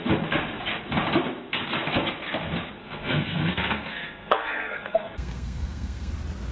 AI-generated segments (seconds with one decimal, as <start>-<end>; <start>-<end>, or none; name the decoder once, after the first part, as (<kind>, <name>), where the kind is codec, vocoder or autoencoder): 2.8-6.1 (codec, SNAC)